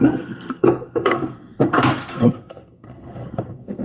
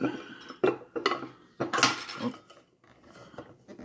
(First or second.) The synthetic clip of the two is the first